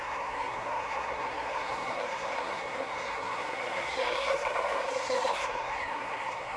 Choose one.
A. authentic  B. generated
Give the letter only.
B